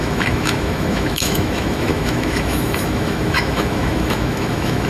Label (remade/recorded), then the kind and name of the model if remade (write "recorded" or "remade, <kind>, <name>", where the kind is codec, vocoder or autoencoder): remade, autoencoder, DAC-VAE